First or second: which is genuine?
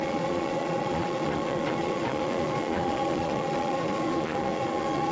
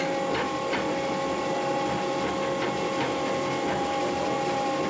second